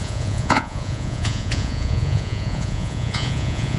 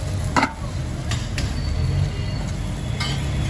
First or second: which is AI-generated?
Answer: first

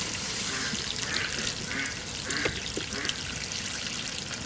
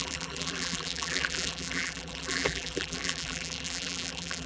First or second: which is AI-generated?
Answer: second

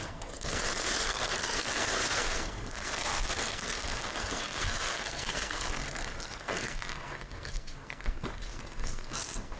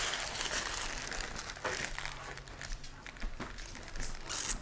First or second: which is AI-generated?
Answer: first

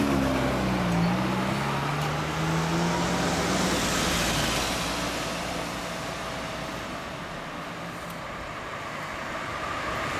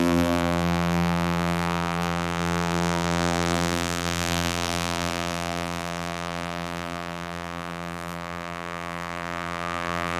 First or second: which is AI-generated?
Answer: second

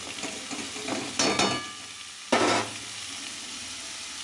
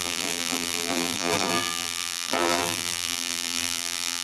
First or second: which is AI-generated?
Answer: second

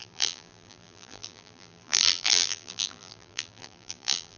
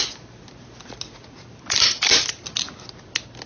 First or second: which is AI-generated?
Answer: first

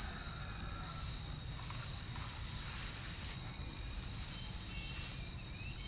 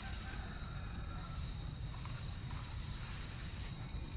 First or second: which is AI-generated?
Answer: second